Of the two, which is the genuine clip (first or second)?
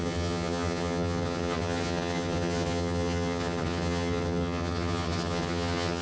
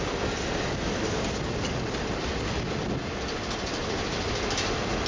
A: second